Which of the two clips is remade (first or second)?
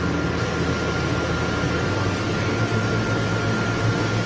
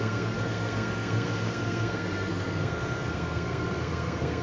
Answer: second